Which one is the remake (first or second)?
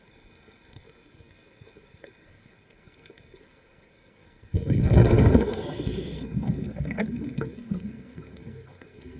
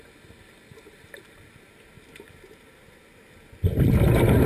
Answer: first